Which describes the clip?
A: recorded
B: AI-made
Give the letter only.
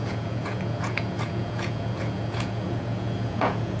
B